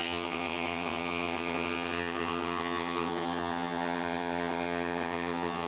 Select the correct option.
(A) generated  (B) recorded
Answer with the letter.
A